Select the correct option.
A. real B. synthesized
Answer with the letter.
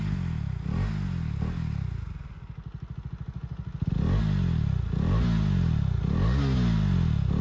A